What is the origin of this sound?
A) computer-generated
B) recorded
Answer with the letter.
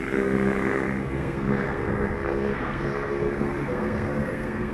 A